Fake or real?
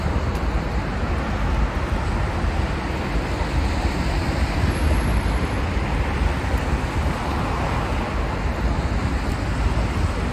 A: real